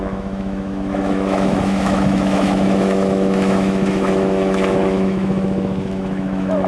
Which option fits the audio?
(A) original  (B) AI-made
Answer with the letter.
B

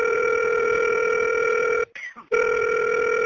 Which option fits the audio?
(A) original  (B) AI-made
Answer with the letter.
B